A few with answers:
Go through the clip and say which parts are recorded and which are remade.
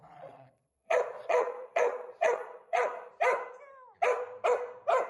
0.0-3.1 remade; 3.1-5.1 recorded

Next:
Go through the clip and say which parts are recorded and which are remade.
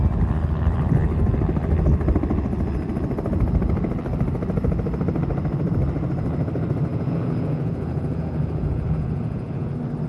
0.0-6.9 recorded; 6.9-9.7 remade; 9.7-10.1 recorded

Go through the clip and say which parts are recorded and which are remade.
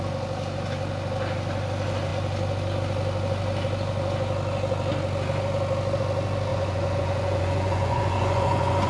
0.0-6.5 recorded; 6.5-8.9 remade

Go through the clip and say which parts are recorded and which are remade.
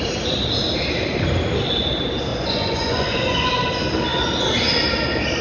0.0-2.3 recorded; 2.3-3.5 remade; 3.5-5.4 recorded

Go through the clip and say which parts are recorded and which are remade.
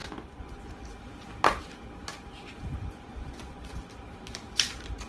0.0-0.7 remade; 0.7-2.7 recorded; 2.7-3.9 remade; 3.9-5.1 recorded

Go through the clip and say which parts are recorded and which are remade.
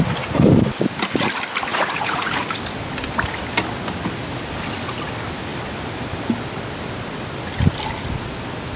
0.0-1.7 recorded; 1.7-2.3 remade; 2.3-8.8 recorded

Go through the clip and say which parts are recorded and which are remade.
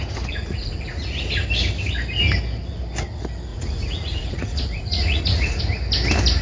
0.0-1.2 remade; 1.2-3.5 recorded; 3.5-5.6 remade; 5.6-6.4 recorded